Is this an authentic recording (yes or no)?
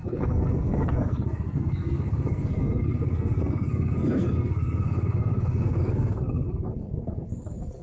no